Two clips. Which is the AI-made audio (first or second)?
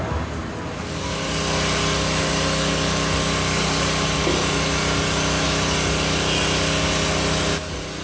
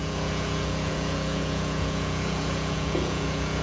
second